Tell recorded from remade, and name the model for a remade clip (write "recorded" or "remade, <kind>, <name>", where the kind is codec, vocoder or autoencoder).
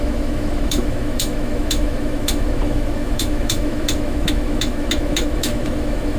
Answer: remade, autoencoder, DAC-VAE